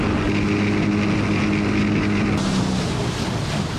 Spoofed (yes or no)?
no